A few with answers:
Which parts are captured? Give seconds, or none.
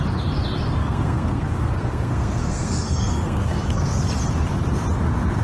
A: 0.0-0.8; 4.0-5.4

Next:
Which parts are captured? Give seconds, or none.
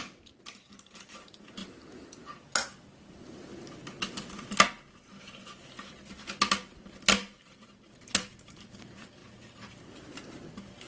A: 1.6-6.5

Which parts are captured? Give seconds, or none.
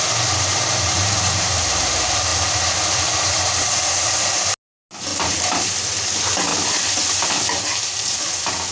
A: 0.0-0.5; 1.7-5.1; 5.7-6.5; 7.3-8.7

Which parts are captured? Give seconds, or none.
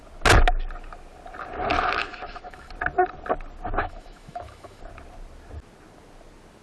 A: 0.0-2.0; 2.7-3.8; 4.8-6.6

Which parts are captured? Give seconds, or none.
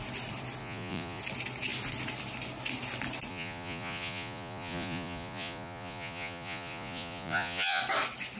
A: 0.0-0.6; 1.2-3.3; 7.8-8.4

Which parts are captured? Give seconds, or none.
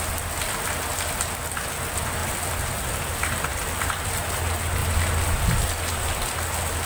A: 0.0-2.2; 4.0-6.9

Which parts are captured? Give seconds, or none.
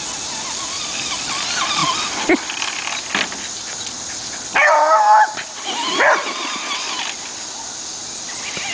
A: 0.0-8.7